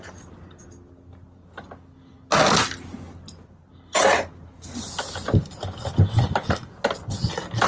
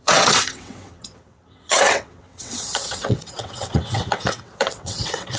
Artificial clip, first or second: second